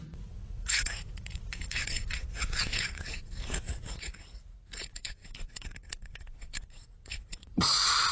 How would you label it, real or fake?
fake